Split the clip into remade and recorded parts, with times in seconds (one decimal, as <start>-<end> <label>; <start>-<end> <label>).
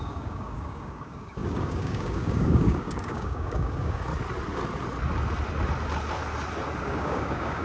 0.0-4.1 remade; 4.1-6.8 recorded; 6.8-7.6 remade